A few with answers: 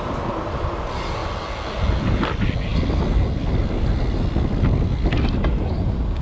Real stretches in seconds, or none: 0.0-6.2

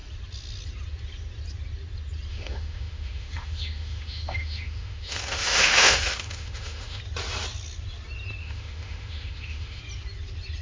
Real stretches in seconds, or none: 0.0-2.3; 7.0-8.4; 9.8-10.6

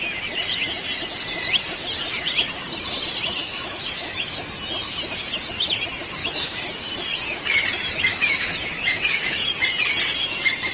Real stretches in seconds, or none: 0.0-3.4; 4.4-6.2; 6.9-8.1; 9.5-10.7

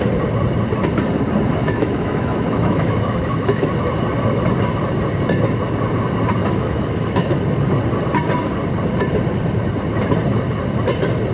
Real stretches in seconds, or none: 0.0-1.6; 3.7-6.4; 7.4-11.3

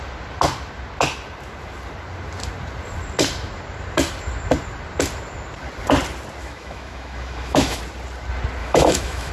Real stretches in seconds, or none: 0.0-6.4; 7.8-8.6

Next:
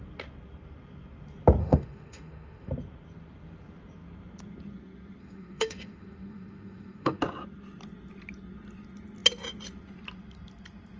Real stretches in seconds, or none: 0.0-1.6; 2.7-5.2; 7.2-11.0